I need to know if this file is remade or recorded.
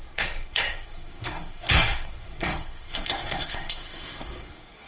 remade